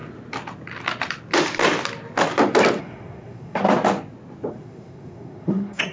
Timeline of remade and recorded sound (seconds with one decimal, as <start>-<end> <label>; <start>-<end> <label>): 0.0-2.8 recorded; 2.8-3.6 remade; 3.6-4.5 recorded; 4.5-5.9 remade